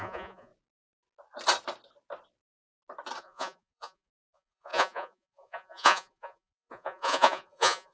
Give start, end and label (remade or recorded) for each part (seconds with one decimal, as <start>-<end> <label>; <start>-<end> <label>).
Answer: 0.0-0.5 remade; 0.5-3.2 recorded; 3.2-7.9 remade